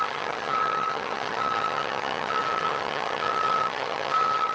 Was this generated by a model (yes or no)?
yes